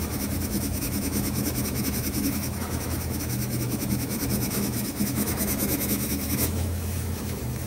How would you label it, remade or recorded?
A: remade